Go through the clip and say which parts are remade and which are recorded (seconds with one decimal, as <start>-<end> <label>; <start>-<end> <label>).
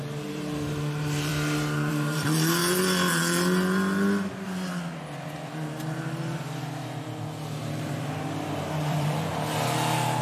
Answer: 0.0-1.3 remade; 1.3-1.9 recorded; 1.9-2.6 remade; 2.6-7.7 recorded; 7.7-9.3 remade; 9.3-10.2 recorded